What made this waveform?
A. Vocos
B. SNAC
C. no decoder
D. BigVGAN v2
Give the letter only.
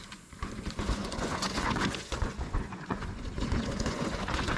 A